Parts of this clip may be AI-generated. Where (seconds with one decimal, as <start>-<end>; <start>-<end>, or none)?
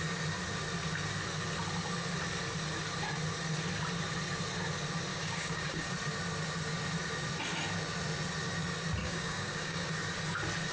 5.1-5.9; 9.0-9.9